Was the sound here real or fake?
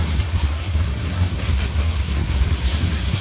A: fake